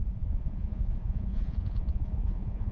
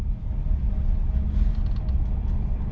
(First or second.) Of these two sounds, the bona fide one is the second